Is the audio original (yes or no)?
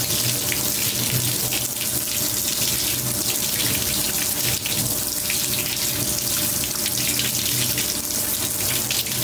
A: yes